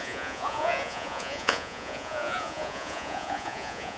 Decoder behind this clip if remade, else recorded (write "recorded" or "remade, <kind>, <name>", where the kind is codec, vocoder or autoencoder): remade, vocoder, Vocos